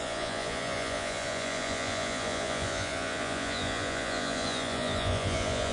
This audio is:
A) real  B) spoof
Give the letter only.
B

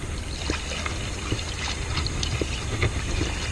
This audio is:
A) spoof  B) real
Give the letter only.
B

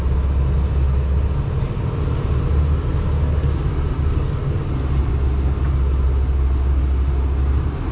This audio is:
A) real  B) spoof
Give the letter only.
A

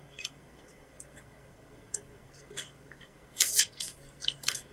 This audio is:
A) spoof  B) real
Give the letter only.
A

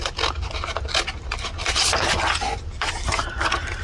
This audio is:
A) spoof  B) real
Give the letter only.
B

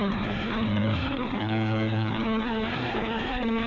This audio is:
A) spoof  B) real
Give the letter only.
A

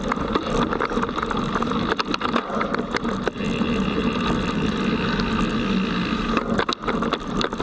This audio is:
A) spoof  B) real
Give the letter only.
B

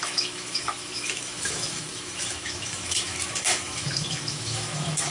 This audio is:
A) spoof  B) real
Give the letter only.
A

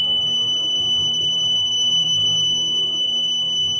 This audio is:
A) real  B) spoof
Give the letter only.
B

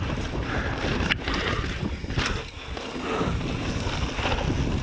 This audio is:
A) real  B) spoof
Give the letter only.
A